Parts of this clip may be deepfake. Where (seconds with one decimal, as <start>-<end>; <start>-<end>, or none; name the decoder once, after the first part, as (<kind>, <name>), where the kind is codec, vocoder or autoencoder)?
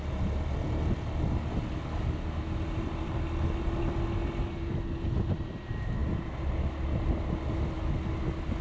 none